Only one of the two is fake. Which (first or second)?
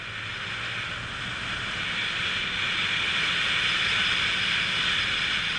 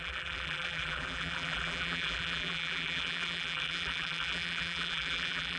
second